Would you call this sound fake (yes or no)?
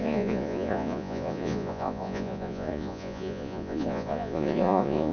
yes